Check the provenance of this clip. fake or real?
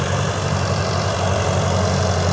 fake